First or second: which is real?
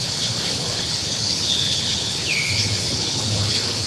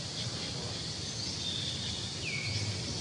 second